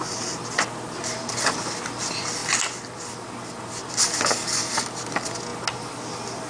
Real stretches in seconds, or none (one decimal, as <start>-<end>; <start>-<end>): 0.0-6.5